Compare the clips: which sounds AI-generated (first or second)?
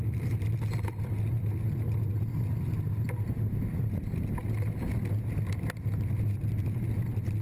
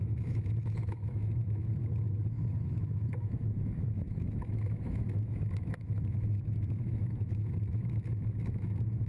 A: second